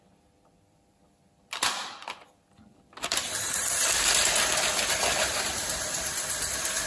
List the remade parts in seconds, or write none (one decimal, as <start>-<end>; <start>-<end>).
0.0-6.9